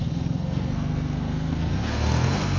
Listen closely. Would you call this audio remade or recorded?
remade